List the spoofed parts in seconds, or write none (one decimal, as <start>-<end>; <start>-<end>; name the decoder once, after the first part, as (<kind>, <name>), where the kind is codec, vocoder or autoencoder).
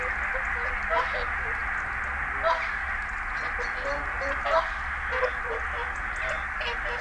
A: none